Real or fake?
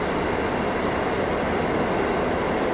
real